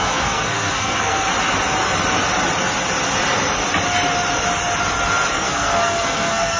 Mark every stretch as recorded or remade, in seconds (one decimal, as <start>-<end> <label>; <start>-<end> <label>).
0.0-1.3 remade; 1.3-5.3 recorded; 5.3-6.6 remade